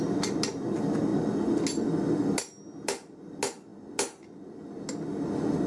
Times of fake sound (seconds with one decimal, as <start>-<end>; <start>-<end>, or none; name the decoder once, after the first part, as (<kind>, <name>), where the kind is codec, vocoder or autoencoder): none